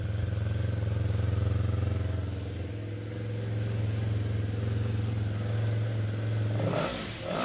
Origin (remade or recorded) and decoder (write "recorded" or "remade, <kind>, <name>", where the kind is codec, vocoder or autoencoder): recorded